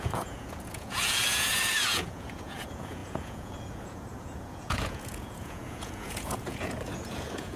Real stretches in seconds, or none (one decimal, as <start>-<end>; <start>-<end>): none